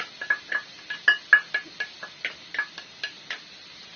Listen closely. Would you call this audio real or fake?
real